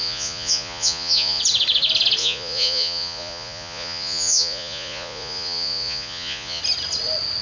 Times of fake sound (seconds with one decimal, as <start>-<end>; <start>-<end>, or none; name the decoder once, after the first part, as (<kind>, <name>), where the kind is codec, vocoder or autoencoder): 0.0-1.4 (vocoder, Vocos); 2.2-6.6